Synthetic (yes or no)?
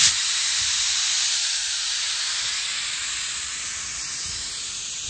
no